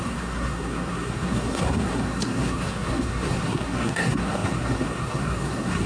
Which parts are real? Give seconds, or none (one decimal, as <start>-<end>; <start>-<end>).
none